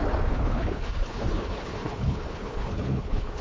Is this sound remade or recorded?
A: remade